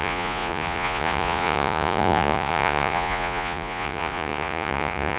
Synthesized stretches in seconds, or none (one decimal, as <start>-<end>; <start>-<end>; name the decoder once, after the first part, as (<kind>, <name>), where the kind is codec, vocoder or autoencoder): 0.0-5.2 (vocoder, Vocos)